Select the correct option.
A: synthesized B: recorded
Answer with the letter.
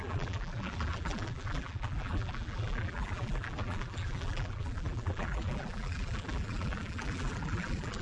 A